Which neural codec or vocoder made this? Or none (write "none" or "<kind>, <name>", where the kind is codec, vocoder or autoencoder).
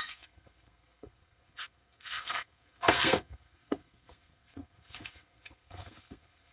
codec, SNAC